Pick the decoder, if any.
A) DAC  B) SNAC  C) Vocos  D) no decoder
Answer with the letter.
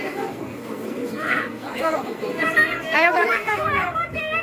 B